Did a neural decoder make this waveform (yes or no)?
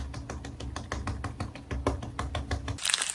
no